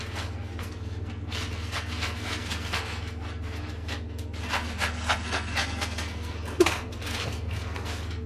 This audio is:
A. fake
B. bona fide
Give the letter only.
A